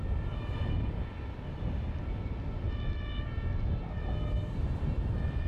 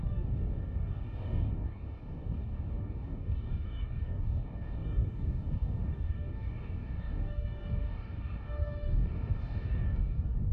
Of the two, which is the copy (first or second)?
second